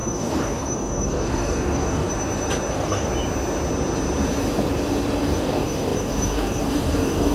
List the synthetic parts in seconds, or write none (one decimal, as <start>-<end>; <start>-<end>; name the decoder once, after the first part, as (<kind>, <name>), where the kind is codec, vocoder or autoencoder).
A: 0.0-2.1 (codec, DAC); 2.7-3.1; 5.2-7.3